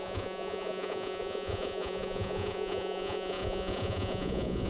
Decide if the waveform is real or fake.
fake